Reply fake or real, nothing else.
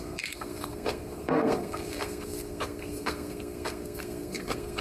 fake